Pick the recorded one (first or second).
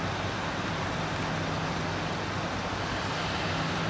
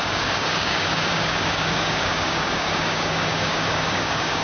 first